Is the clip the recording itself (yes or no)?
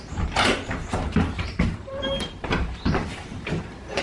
no